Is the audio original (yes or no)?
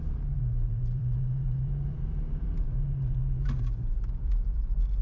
no